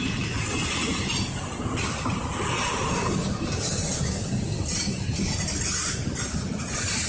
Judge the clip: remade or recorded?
recorded